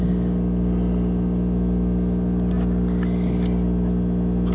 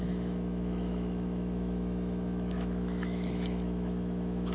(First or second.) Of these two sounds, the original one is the first